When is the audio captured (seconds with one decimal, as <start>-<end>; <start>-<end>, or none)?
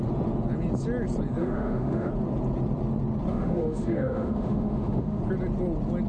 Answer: 0.0-1.4; 2.1-3.3; 5.2-6.1